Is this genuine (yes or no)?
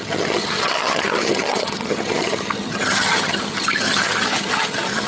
no